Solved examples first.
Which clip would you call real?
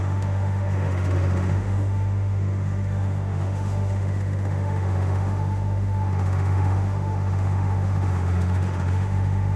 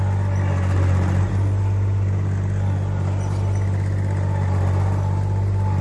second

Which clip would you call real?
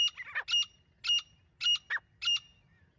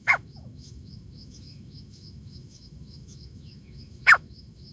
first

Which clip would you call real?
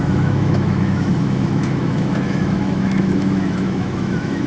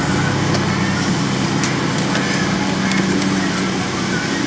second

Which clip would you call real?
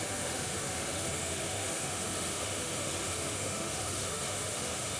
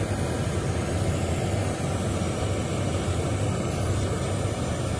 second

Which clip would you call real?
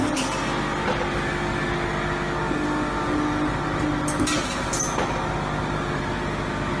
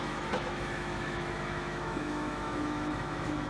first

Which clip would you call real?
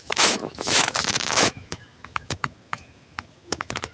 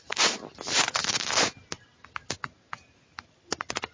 second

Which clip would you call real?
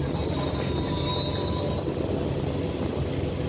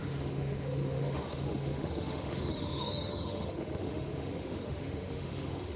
first